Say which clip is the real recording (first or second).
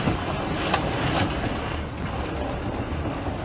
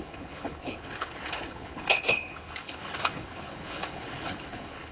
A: first